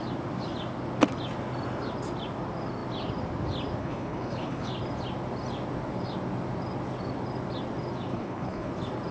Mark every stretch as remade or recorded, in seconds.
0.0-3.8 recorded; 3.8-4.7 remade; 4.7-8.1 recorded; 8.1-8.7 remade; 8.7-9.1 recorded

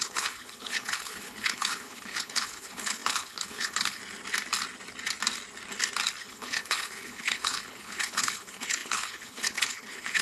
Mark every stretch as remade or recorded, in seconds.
0.0-4.0 remade; 4.0-6.2 recorded; 6.2-10.2 remade

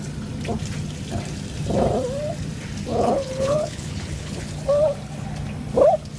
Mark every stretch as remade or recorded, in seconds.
0.0-2.9 recorded; 2.9-4.5 remade; 4.5-6.2 recorded

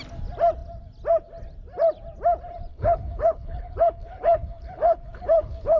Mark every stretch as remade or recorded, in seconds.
0.0-2.7 recorded; 2.7-5.8 remade

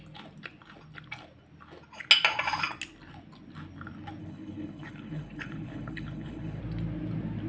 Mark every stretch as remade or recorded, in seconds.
0.0-4.2 recorded; 4.2-6.6 remade; 6.6-7.5 recorded

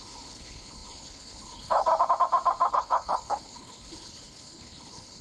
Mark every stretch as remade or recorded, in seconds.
0.0-1.9 remade; 1.9-2.7 recorded; 2.7-5.2 remade

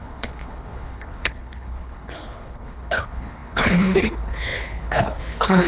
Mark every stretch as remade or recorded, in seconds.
0.0-5.7 remade